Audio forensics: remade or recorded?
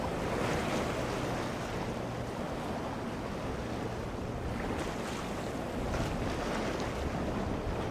recorded